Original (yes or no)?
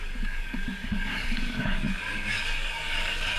no